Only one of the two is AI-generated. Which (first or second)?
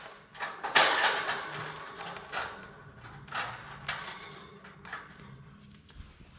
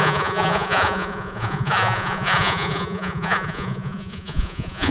second